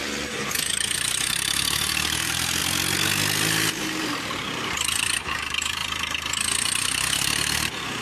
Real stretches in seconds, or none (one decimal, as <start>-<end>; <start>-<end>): 2.6-3.7; 5.8-6.6